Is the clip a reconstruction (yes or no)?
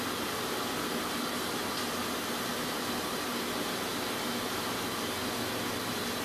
no